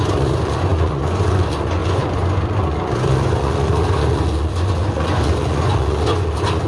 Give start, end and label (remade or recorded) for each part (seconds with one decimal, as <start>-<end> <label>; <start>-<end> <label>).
0.0-6.7 remade

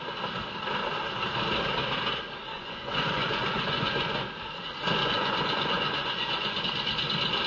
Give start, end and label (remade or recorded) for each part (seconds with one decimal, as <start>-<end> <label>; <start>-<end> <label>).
0.0-2.5 recorded; 2.5-4.3 remade; 4.3-5.0 recorded; 5.0-6.6 remade; 6.6-7.5 recorded

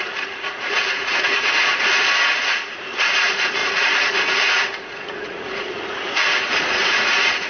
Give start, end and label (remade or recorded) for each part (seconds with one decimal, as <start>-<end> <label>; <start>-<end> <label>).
0.0-1.6 remade; 1.6-2.4 recorded; 2.4-7.5 remade

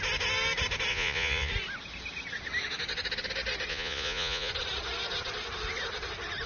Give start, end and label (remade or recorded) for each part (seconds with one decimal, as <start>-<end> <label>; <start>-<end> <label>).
0.0-0.9 recorded; 0.9-1.5 remade; 1.5-3.7 recorded; 3.7-4.5 remade; 4.5-6.5 recorded

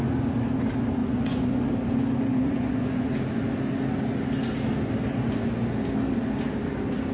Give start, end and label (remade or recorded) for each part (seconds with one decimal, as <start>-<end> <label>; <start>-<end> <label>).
0.0-1.0 recorded; 1.0-1.7 remade; 1.7-2.3 recorded; 2.3-3.1 remade; 3.1-7.1 recorded

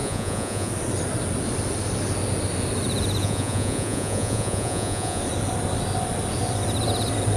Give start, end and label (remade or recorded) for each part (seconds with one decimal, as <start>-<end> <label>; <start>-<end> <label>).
0.0-0.7 remade; 0.7-3.2 recorded; 3.2-5.2 remade; 5.2-7.4 recorded